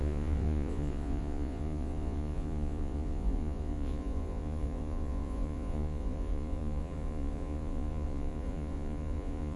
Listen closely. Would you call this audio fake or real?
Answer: fake